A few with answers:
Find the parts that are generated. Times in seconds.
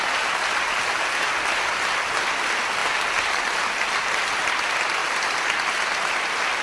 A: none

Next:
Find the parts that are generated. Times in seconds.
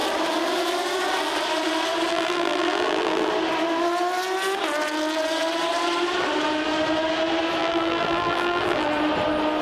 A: 2.1-3.3 (vocoder, BigVGAN v2); 7.6-8.9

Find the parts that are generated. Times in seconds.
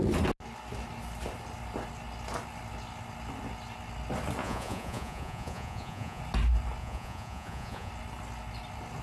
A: 4.4-6.2 (vocoder, Vocos); 6.8-7.9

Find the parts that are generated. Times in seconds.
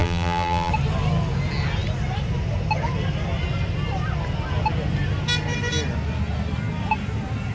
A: 0.0-0.7 (vocoder, BigVGAN v2)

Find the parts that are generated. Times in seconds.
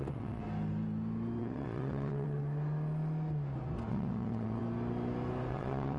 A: 0.0-0.4 (vocoder, WaveNeXt); 1.4-2.4; 3.9-4.6; 5.5-6.0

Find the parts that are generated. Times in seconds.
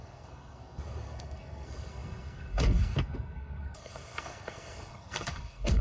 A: 0.0-5.8 (codec, SNAC)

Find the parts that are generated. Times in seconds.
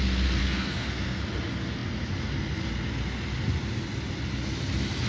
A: 0.4-1.2 (codec, SNAC)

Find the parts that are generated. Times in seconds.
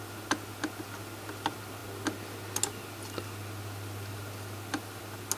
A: none